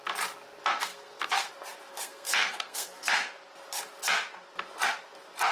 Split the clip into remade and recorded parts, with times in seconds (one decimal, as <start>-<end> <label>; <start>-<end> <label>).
0.0-0.7 recorded; 0.7-1.5 remade; 1.5-1.9 recorded; 1.9-3.3 remade; 3.3-5.5 recorded